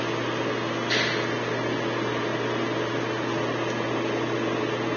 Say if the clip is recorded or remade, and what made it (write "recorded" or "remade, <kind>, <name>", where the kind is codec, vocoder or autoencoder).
recorded